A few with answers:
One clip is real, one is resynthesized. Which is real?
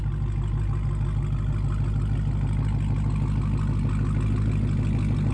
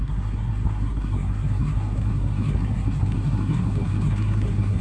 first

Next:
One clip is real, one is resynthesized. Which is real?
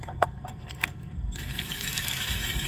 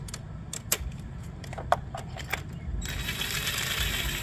second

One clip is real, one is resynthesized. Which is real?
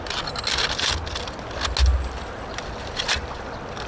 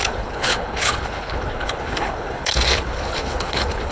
first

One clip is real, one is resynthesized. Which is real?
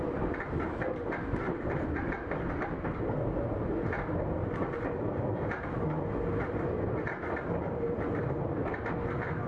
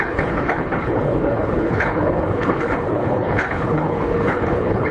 first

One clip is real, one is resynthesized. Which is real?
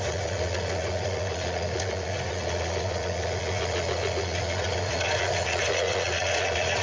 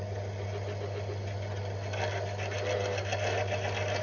second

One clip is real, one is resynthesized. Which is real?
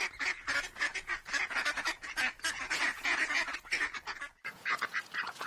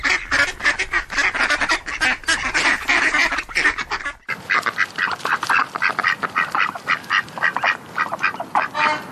second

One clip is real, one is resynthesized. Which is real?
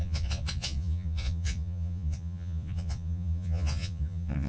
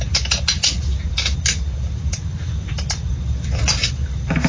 second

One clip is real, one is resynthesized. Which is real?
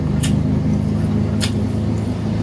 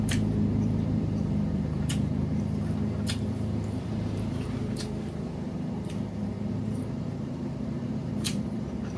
first